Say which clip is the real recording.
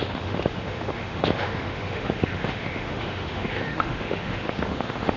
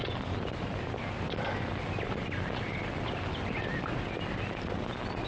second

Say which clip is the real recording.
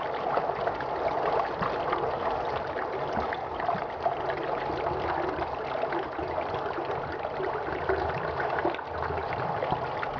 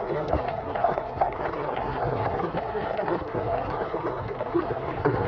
first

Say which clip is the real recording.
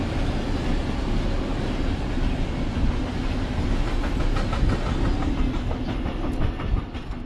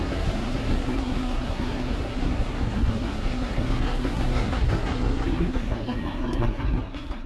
first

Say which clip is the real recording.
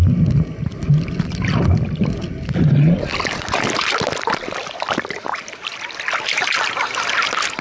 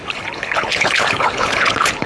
first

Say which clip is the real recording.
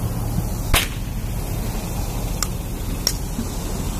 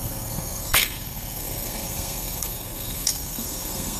first